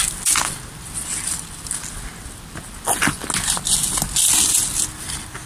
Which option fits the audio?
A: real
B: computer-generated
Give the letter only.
A